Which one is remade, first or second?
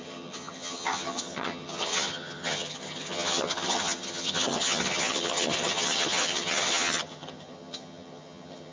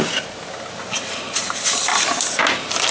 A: first